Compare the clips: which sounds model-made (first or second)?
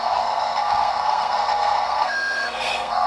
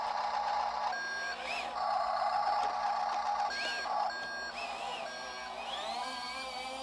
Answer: first